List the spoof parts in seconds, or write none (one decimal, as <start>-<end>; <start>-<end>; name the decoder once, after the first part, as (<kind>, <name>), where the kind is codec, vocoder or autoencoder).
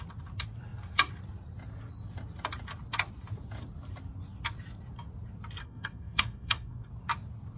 5.6-6.9 (codec, SNAC)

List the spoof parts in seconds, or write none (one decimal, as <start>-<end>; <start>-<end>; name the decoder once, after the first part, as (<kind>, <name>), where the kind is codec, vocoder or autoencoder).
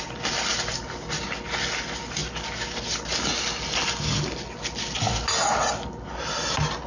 none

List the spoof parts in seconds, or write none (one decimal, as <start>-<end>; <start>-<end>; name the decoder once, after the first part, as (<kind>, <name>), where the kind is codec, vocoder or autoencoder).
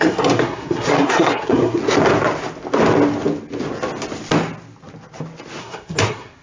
0.0-1.8 (codec, SNAC); 5.6-6.4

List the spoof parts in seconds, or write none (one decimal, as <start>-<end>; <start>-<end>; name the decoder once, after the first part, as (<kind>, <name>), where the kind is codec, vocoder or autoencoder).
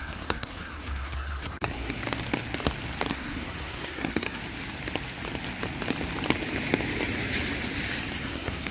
0.0-2.0 (codec, SNAC); 3.1-4.4; 8.2-8.7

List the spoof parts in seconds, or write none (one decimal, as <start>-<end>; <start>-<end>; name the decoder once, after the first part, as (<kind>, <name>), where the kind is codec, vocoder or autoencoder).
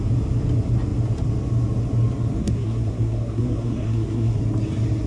2.4-4.4 (codec, SNAC)